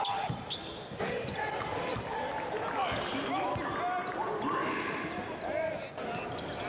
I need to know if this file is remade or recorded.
recorded